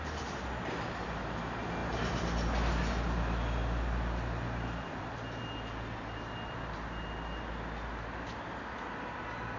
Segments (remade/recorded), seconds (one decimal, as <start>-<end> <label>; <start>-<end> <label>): 0.0-9.6 recorded